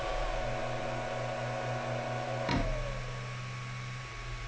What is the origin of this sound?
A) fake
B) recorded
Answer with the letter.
B